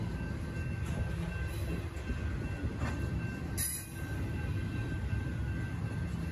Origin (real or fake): real